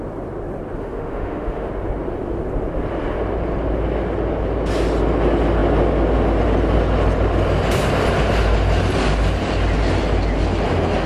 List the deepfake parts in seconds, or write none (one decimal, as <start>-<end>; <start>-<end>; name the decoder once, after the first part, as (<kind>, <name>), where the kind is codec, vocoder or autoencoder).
0.8-1.7 (autoencoder, DAC-VAE)

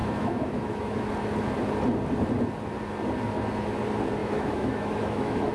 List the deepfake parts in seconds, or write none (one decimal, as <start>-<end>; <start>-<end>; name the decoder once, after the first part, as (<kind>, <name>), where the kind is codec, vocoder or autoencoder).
0.0-1.1 (autoencoder, DAC-VAE); 4.2-5.5

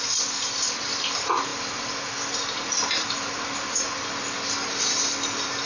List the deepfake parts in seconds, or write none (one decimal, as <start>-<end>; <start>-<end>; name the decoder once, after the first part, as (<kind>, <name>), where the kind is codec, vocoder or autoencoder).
none

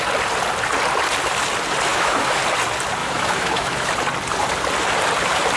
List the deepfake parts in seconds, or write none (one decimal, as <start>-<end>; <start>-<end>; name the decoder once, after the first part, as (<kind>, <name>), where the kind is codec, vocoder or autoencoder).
1.9-2.4 (autoencoder, DAC-VAE); 3.0-3.9

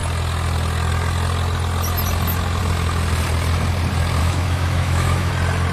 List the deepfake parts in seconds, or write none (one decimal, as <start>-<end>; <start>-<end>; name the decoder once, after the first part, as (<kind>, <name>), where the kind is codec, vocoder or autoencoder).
4.2-5.3 (autoencoder, DAC-VAE)

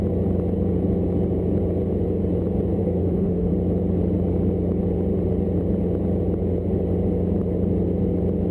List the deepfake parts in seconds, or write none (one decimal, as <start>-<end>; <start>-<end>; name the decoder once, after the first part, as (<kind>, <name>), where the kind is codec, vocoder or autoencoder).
2.8-3.5 (autoencoder, DAC-VAE)

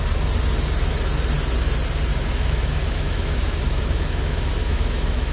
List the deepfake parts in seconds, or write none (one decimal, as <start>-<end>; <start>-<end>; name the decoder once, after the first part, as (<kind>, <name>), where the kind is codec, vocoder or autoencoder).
2.1-5.3 (autoencoder, DAC-VAE)